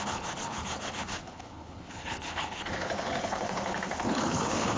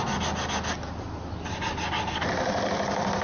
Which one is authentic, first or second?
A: second